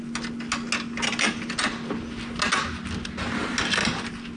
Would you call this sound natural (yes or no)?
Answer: yes